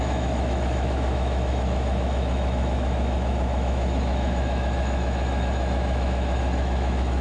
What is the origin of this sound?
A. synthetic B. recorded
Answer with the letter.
A